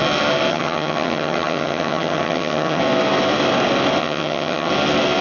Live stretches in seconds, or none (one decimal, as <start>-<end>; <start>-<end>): 0.0-0.5; 2.8-4.0; 4.7-5.2